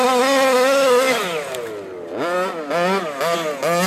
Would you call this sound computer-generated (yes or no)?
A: no